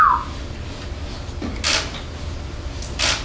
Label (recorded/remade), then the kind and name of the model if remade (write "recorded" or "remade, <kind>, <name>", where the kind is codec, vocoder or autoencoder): recorded